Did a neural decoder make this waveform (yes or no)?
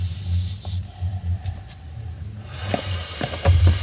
no